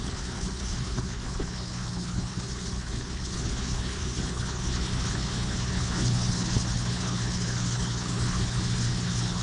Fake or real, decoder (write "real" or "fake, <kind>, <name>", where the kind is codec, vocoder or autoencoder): fake, codec, HILCodec